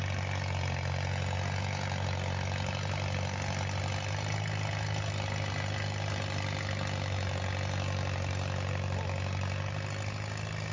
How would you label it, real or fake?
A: real